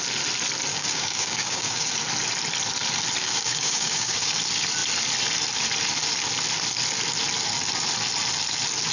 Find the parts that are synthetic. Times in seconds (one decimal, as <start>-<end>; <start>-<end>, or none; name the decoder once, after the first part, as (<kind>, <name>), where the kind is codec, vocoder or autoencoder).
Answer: 0.7-1.9 (codec, DAC); 3.2-4.3